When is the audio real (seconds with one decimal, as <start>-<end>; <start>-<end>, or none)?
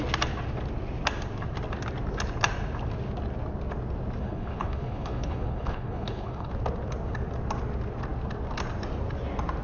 0.0-4.2; 6.5-9.6